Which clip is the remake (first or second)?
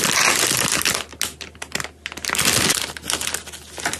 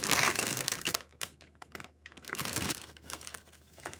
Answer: second